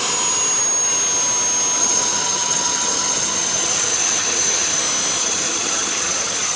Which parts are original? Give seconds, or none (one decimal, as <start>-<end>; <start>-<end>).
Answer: 0.0-1.8; 4.8-5.2